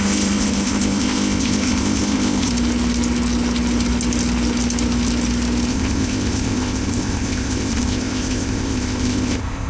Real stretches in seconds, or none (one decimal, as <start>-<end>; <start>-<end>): 2.5-5.7